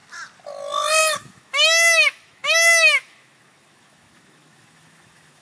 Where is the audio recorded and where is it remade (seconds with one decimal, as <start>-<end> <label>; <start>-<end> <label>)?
0.0-1.0 recorded; 1.0-5.4 remade